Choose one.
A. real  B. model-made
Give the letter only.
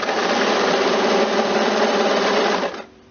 B